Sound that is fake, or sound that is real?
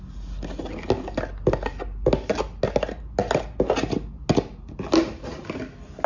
real